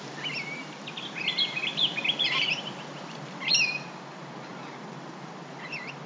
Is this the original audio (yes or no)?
no